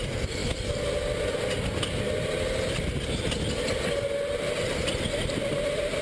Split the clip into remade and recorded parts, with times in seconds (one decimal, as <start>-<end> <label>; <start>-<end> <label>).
0.0-6.0 recorded